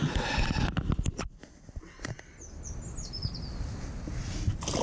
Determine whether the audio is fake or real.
real